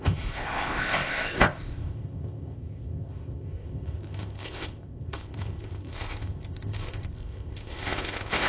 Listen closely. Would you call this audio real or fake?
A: fake